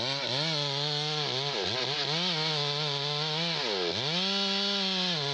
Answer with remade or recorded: recorded